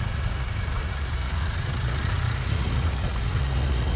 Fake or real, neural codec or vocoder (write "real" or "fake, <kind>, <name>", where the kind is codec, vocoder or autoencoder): fake, vocoder, Vocos